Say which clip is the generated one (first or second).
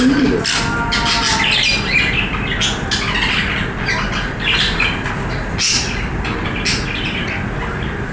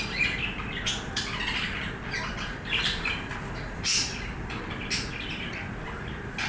second